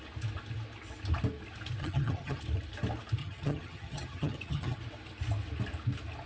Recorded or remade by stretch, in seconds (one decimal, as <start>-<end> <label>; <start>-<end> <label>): 0.0-1.8 recorded; 1.8-2.4 remade; 2.4-3.2 recorded; 3.2-4.8 remade; 4.8-6.3 recorded